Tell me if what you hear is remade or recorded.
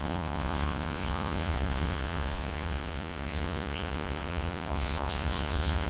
remade